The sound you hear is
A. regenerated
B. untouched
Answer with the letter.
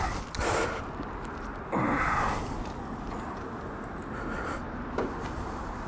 B